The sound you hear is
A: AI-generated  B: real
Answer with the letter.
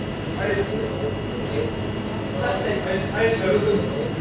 B